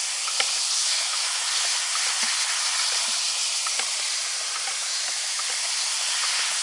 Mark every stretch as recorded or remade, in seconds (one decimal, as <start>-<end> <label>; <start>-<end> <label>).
0.0-0.8 recorded; 0.8-1.5 remade; 1.5-4.8 recorded; 4.8-5.4 remade; 5.4-6.6 recorded